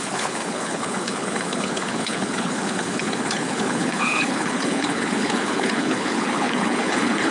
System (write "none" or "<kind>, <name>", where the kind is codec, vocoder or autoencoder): codec, HILCodec